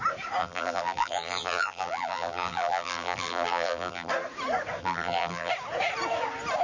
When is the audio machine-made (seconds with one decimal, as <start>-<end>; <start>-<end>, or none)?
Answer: 0.4-4.1; 4.8-5.5